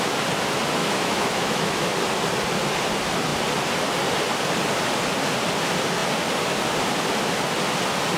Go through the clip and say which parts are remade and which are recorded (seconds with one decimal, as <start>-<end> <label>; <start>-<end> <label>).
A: 0.0-0.8 recorded; 0.8-1.9 remade; 1.9-8.2 recorded